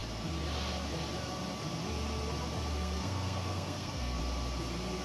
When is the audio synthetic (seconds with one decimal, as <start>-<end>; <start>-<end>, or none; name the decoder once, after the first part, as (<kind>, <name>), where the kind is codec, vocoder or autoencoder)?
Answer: 2.7-4.2 (codec, SNAC)